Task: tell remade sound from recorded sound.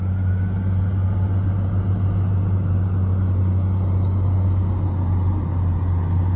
recorded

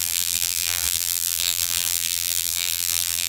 remade